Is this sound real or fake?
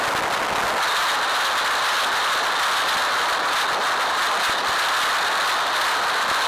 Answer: real